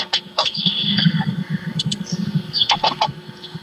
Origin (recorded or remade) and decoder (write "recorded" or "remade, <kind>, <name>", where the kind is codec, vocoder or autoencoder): remade, codec, SNAC